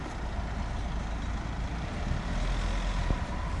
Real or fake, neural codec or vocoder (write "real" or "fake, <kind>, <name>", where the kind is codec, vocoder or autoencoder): real